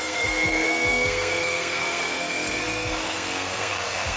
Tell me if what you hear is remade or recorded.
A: remade